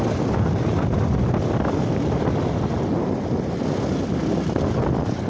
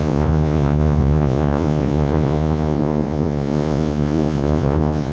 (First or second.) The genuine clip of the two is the first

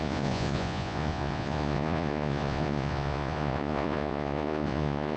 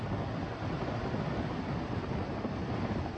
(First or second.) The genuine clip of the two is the second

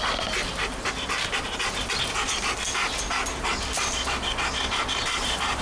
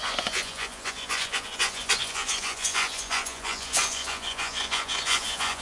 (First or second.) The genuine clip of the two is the first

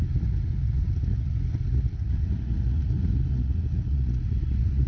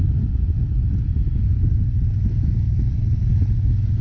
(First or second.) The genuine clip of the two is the second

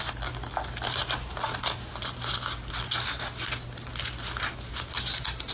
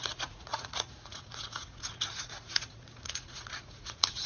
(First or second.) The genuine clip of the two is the first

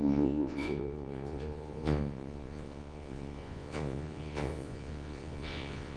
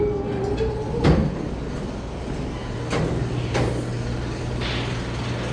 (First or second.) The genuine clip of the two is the second